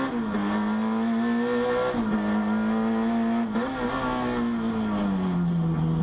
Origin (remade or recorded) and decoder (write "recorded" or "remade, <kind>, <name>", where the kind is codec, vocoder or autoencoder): recorded